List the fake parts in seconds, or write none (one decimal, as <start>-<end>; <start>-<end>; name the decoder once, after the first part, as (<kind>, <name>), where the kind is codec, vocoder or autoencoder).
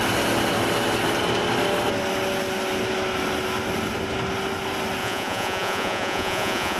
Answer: 5.0-6.8 (vocoder, Vocos)